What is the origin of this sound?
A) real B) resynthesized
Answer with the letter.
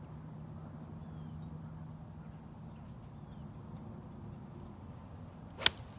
A